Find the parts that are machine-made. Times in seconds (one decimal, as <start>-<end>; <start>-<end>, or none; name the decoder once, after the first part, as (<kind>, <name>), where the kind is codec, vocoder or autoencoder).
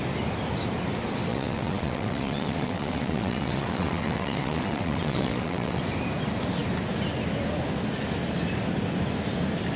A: 1.3-5.8 (vocoder, WaveNeXt)